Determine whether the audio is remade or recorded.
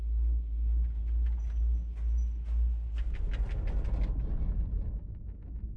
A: recorded